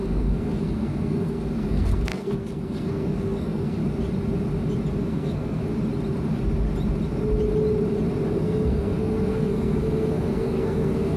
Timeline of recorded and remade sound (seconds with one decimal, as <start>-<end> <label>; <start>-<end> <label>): 0.0-3.8 remade; 3.8-5.0 recorded; 5.0-5.6 remade; 5.6-8.3 recorded; 8.3-11.2 remade